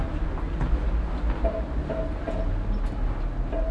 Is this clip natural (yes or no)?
yes